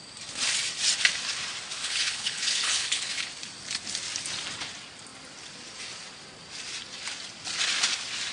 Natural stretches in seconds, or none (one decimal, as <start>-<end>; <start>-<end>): 0.0-1.8; 3.3-8.3